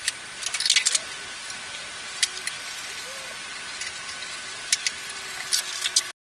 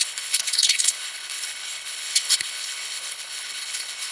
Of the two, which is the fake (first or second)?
second